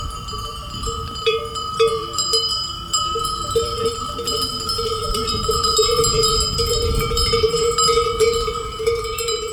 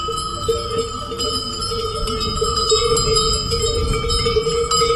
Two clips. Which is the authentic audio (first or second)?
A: second